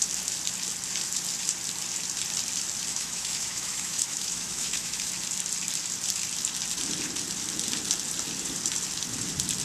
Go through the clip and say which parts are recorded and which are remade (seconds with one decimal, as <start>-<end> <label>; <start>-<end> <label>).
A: 0.0-2.9 recorded; 2.9-5.1 remade; 5.1-9.6 recorded